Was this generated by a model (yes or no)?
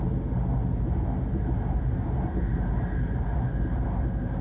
no